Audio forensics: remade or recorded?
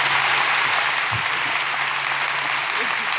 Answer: recorded